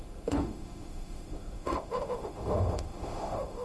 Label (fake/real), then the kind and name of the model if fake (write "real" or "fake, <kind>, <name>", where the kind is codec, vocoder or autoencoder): fake, autoencoder, DAC-VAE